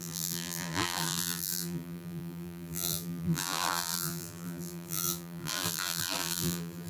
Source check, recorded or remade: remade